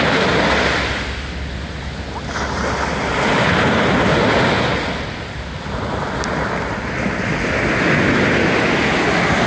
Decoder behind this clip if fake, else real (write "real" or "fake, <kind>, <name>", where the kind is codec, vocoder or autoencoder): real